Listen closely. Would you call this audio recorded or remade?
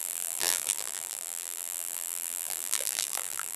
remade